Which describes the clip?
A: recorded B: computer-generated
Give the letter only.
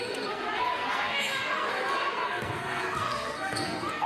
B